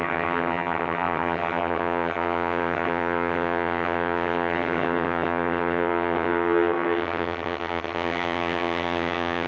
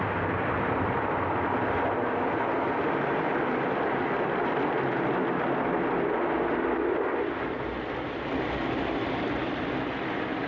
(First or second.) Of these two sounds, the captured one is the second